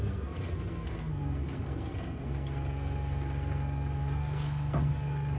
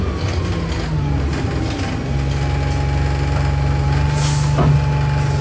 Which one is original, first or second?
second